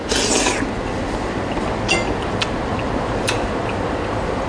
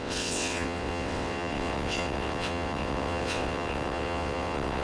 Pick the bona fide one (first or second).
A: first